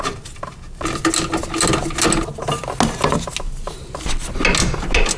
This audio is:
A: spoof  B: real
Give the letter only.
B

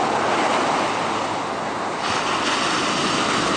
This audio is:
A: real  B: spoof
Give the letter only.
A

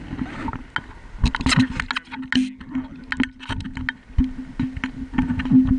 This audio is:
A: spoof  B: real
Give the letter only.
B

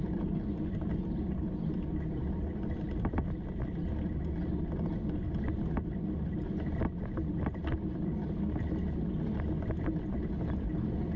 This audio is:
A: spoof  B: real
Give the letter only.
B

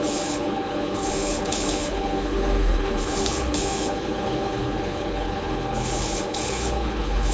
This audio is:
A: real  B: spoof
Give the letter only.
B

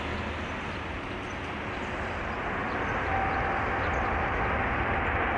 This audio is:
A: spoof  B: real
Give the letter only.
B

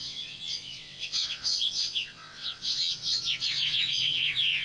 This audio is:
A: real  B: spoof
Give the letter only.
B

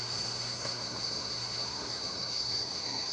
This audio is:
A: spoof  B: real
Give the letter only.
A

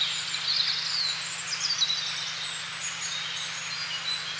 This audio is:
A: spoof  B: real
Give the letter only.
B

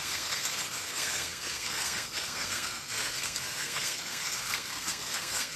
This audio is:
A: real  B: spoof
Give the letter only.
B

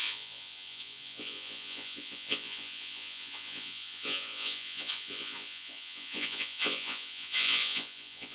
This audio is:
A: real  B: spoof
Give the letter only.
B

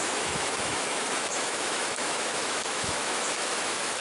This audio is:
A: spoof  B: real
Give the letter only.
A